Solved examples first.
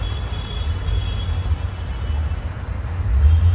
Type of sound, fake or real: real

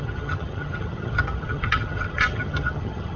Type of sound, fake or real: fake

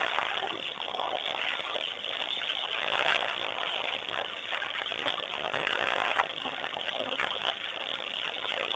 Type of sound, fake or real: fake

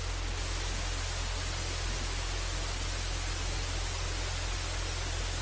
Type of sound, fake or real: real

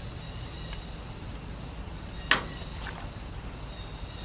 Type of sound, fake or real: real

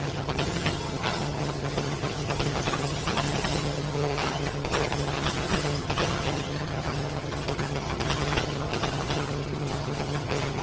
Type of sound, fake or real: fake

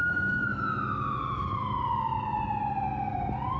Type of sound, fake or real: real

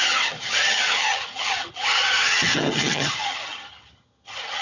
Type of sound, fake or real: fake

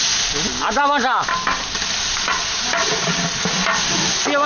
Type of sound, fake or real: real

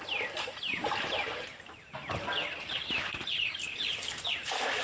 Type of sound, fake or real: real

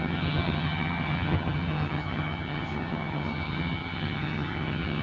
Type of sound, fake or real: fake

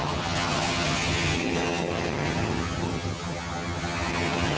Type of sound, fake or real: fake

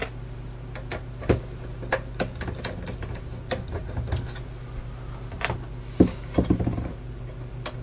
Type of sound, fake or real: real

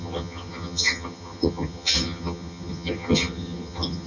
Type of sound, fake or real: fake